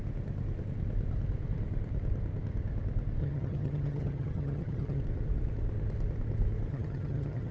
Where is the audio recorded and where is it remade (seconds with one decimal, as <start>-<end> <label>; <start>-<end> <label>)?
0.0-3.2 recorded; 3.2-5.0 remade; 5.0-6.7 recorded; 6.7-7.5 remade